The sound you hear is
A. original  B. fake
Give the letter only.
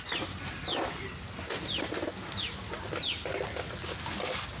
A